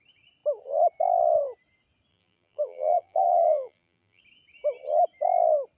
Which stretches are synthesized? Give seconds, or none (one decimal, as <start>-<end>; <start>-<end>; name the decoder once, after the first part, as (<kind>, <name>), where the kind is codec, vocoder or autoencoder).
2.1-4.2 (vocoder, BigVGAN v2)